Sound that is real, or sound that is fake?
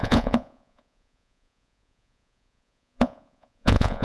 fake